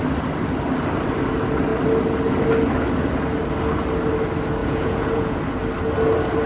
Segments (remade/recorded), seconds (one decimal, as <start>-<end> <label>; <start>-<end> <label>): 0.0-4.6 recorded; 4.6-5.4 remade; 5.4-6.5 recorded